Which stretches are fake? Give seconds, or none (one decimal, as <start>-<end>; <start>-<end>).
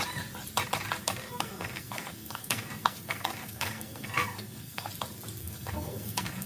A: 1.0-4.9; 5.4-6.5